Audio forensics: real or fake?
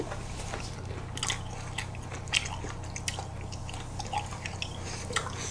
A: real